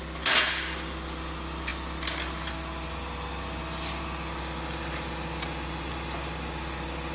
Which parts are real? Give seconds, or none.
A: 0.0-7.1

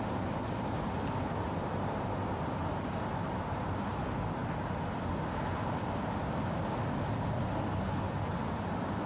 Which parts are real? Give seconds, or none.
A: 0.0-9.1

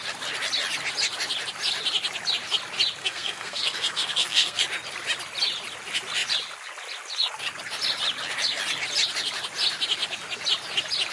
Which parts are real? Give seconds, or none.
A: 0.0-3.0; 4.6-11.1

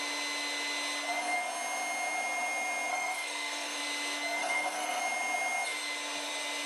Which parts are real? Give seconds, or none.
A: 0.0-2.9; 3.8-4.4; 5.0-6.7

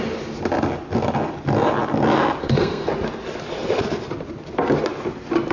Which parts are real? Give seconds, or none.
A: 0.0-2.4; 2.9-5.5

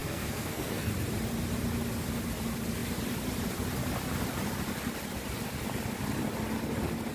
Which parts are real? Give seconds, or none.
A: 0.9-7.1

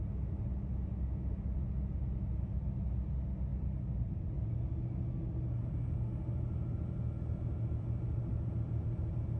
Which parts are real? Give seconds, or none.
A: 0.0-9.4